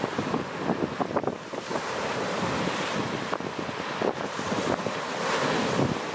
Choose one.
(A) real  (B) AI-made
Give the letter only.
A